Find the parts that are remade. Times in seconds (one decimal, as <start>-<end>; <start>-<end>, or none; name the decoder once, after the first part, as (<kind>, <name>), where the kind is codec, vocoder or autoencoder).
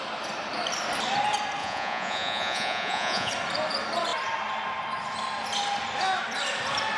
1.6-3.3 (vocoder, Vocos)